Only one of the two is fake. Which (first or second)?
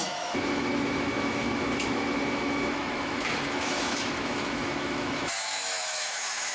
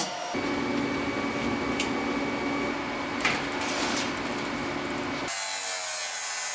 first